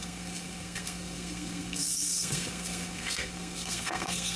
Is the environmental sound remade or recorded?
remade